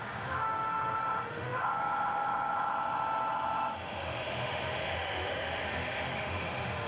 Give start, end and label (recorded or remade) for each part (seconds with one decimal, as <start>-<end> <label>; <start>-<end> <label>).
0.0-6.9 remade